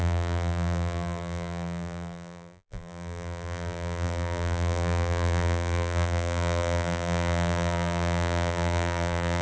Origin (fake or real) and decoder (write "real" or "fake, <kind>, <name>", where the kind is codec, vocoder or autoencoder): fake, vocoder, BigVGAN v2